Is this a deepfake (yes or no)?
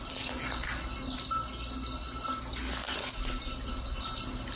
no